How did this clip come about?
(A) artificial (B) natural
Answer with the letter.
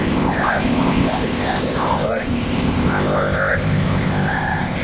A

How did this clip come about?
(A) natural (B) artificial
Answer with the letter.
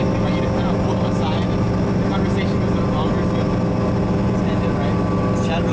A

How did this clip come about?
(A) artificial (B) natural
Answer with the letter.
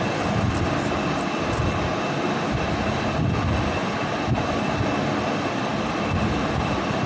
B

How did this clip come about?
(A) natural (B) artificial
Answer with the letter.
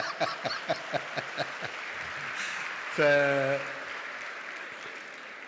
A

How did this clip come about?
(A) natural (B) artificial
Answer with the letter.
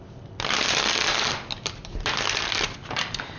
A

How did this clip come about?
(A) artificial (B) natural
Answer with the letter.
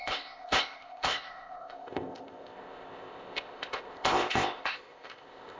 A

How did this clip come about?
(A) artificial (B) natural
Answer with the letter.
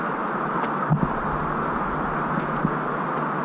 B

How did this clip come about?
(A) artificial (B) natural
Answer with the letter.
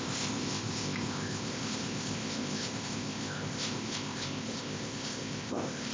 A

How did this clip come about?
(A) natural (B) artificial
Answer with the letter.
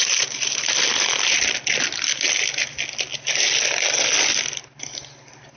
A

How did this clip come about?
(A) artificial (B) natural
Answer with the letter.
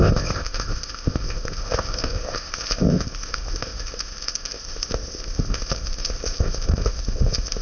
A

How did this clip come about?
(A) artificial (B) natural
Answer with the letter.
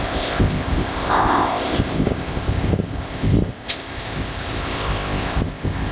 A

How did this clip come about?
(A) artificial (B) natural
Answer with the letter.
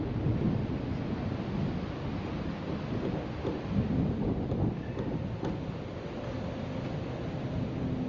B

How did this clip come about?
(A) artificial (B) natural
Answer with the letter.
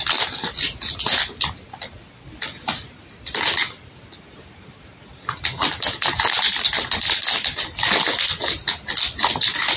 B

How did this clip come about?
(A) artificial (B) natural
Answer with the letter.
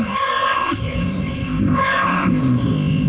A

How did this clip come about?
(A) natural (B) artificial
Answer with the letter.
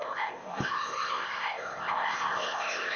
B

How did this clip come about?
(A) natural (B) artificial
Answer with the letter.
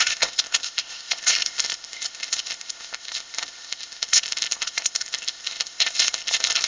B